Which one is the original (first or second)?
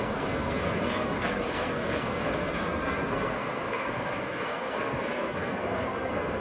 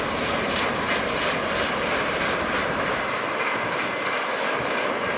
second